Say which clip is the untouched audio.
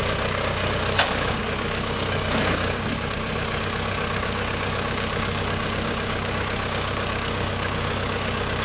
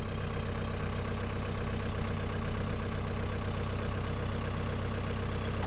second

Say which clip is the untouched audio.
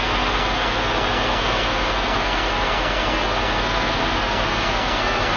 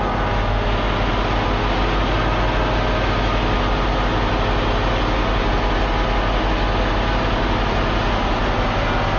second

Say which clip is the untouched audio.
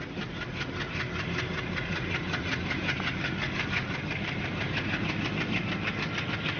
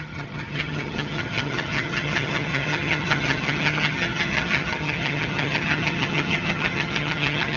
first